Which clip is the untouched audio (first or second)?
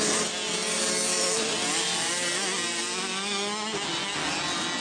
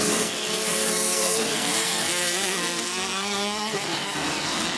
first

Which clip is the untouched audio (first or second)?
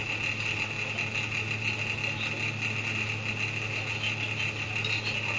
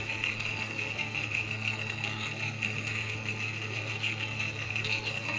first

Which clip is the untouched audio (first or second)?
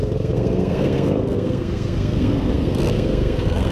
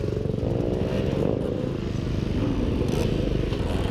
second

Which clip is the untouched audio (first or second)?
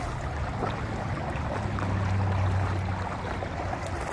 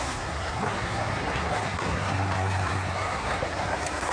first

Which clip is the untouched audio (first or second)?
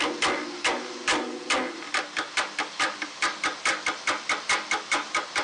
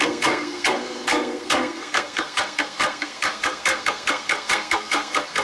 first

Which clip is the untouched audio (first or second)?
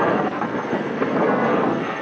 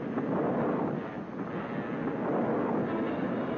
second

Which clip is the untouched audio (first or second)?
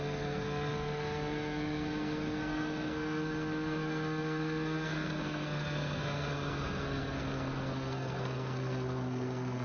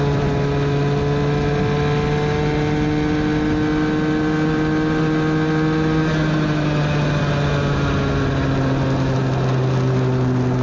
second